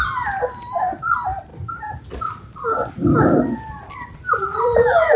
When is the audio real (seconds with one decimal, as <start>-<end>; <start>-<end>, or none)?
0.0-5.2